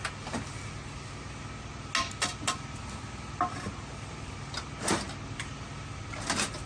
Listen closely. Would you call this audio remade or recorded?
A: recorded